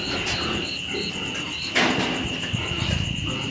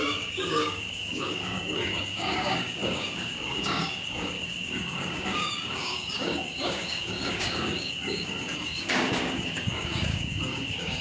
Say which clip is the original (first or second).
first